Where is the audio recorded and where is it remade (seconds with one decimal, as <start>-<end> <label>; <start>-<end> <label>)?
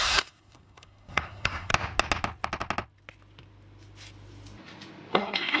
0.0-1.7 remade; 1.7-5.1 recorded; 5.1-5.6 remade